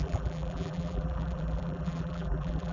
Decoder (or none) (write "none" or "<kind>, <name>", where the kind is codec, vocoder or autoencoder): vocoder, BigVGAN v2